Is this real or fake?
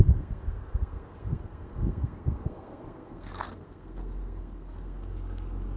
fake